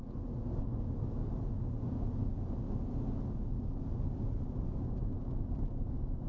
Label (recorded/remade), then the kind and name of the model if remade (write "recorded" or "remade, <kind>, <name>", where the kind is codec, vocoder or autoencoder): recorded